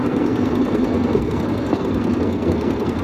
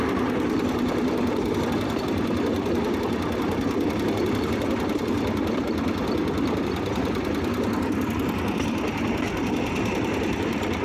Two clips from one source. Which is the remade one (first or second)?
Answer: first